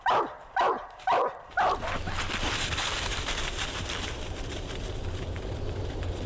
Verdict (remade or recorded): remade